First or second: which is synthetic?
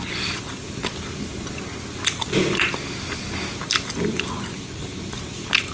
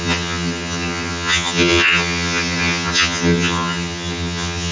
second